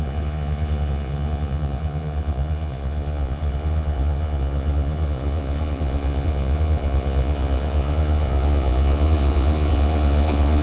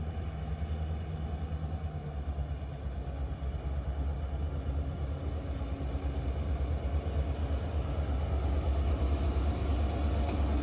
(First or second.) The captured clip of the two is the second